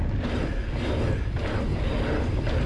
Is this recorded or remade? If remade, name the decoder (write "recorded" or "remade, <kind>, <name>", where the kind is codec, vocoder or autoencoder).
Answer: recorded